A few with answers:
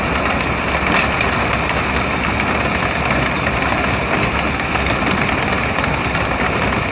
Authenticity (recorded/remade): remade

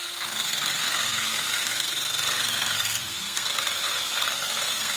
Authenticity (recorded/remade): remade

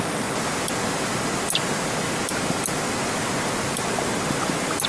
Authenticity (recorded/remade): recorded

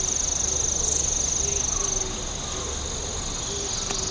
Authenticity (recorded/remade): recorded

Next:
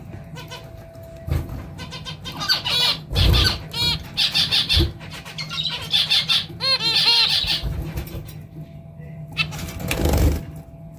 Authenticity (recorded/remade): recorded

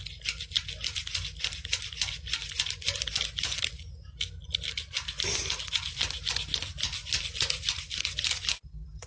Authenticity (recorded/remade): recorded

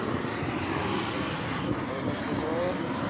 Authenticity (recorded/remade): recorded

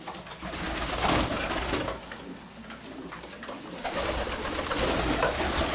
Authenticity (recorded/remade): recorded